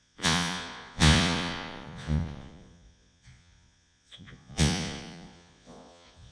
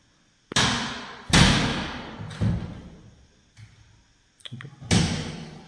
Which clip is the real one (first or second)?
second